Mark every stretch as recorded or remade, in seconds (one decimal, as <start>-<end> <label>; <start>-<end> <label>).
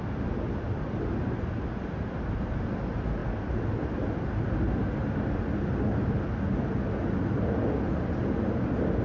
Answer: 0.0-9.0 recorded